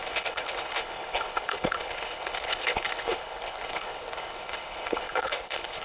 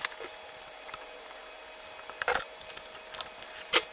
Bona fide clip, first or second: second